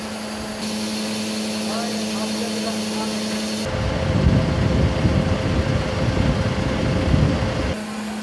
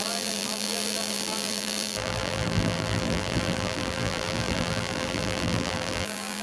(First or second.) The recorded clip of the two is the first